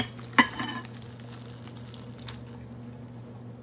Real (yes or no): yes